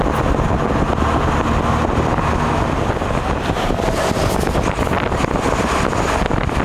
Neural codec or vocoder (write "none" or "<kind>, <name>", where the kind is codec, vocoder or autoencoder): none